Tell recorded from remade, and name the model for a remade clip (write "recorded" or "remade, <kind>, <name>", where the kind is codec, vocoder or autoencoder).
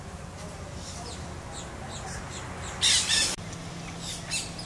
recorded